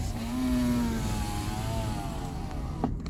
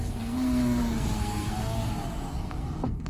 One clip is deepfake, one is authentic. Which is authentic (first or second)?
first